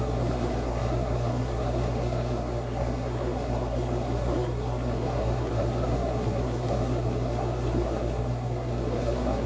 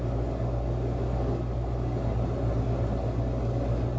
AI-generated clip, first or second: first